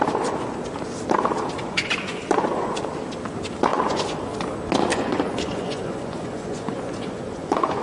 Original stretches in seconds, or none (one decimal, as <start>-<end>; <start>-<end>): 0.0-1.6; 2.8-3.7; 4.2-4.9